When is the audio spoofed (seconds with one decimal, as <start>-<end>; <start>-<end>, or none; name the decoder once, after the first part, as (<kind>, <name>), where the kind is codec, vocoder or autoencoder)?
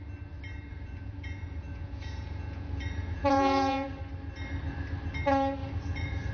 0.7-4.0 (vocoder, Vocos); 5.6-6.3